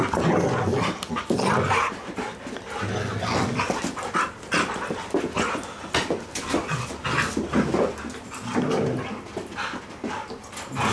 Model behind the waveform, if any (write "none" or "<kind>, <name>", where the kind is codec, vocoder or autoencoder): none